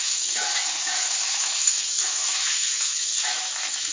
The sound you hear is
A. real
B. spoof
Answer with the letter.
B